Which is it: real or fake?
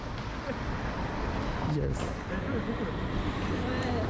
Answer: real